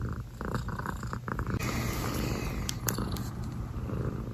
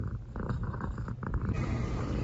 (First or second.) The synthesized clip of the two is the second